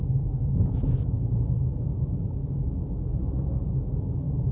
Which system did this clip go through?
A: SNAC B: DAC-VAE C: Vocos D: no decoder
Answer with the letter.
B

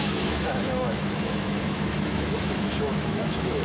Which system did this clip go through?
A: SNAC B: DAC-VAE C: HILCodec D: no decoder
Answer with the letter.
B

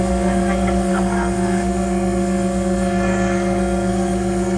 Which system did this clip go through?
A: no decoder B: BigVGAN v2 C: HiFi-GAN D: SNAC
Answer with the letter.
D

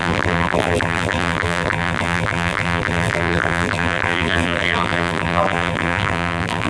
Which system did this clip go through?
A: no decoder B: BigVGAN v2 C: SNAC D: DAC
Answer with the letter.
B